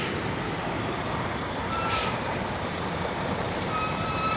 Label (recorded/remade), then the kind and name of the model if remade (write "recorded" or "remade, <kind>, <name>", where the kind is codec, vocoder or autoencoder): remade, vocoder, BigVGAN v2